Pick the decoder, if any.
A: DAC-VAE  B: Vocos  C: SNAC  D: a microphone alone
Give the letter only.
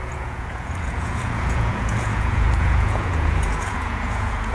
B